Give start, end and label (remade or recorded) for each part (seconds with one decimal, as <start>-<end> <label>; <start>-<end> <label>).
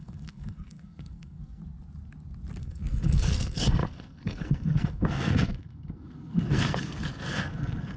0.0-1.6 remade; 1.6-2.6 recorded; 2.6-8.0 remade